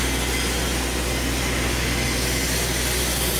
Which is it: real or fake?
real